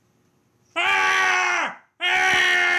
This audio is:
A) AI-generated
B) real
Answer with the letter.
B